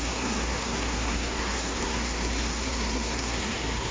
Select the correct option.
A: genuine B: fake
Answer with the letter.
B